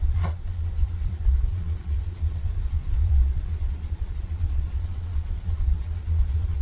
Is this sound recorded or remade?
remade